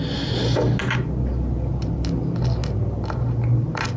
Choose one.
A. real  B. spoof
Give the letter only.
A